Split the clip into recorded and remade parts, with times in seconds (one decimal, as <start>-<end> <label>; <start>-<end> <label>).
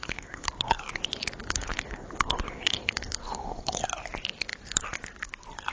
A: 0.0-0.5 remade; 0.5-1.4 recorded; 1.4-3.8 remade; 3.8-5.7 recorded